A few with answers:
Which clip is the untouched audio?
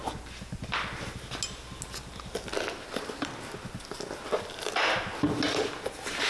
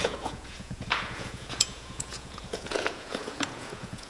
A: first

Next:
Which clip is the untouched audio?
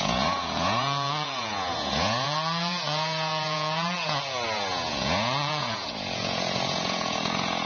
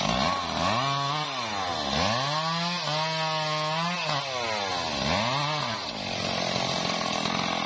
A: second